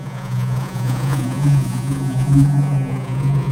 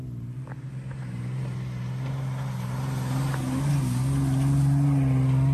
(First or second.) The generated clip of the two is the first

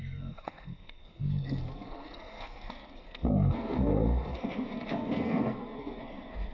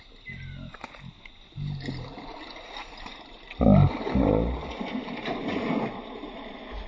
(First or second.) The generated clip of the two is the first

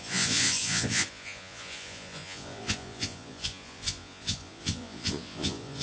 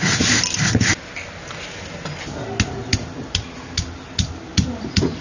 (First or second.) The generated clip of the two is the first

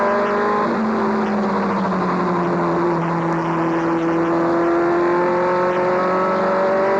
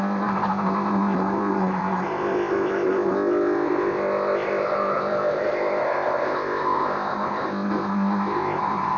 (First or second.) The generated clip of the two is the second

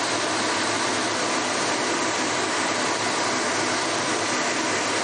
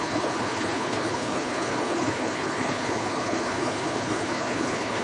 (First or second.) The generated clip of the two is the second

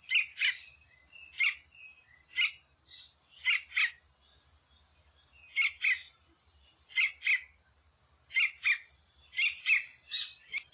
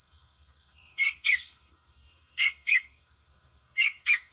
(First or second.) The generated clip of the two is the second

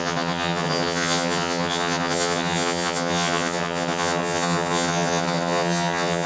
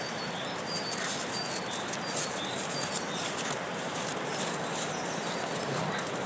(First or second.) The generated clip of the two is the first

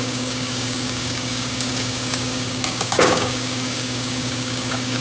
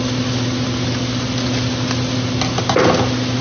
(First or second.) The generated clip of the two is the first